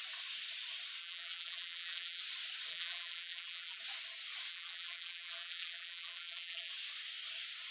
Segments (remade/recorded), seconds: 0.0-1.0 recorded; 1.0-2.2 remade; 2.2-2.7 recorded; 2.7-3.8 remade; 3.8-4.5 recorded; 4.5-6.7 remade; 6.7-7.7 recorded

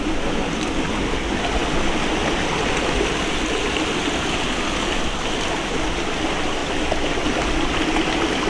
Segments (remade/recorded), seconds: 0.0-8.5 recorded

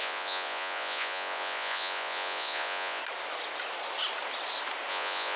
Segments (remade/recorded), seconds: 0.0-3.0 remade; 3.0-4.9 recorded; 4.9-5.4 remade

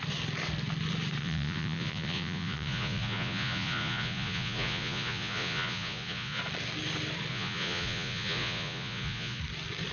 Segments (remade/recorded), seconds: 0.0-1.2 recorded; 1.2-6.4 remade; 6.4-7.3 recorded; 7.3-9.4 remade; 9.4-9.9 recorded

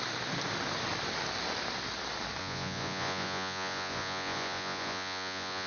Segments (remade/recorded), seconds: 0.0-2.4 recorded; 2.4-5.7 remade

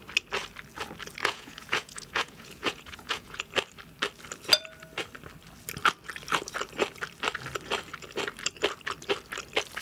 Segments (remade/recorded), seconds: 0.0-1.2 recorded; 1.2-3.5 remade; 3.5-9.8 recorded